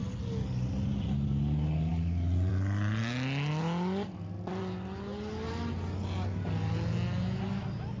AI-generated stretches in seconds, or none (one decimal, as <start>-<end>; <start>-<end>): none

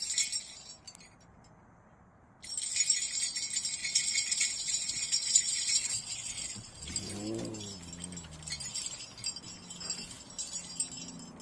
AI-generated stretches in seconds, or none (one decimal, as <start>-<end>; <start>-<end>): 3.8-6.9

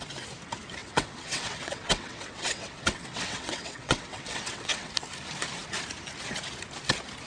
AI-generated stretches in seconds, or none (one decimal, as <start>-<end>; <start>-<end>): 0.8-4.9

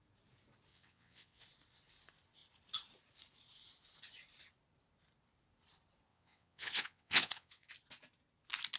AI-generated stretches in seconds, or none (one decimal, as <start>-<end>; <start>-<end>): 0.7-1.4; 6.1-7.7

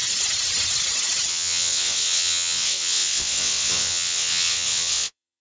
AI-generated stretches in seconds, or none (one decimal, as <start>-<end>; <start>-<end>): 1.3-5.4